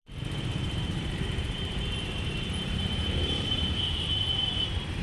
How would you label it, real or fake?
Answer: fake